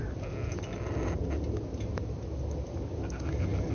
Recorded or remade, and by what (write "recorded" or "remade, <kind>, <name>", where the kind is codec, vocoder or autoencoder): recorded